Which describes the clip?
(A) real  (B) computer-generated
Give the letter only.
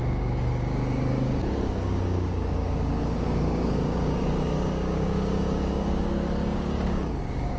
B